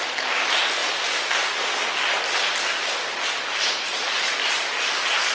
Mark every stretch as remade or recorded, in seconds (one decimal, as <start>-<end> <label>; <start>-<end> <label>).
0.0-5.3 recorded